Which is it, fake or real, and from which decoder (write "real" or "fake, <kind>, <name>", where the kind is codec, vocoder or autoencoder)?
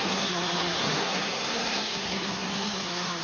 fake, codec, SNAC